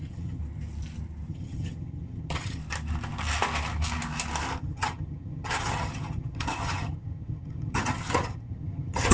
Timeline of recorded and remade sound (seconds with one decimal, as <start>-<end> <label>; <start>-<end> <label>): 0.0-0.4 remade; 0.4-1.3 recorded; 1.3-2.6 remade; 2.6-4.6 recorded; 4.6-9.1 remade